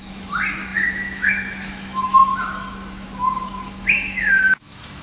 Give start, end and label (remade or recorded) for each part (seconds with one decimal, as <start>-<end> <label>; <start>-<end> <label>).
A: 0.0-5.0 remade